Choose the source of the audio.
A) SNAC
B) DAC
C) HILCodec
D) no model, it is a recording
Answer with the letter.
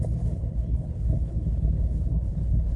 C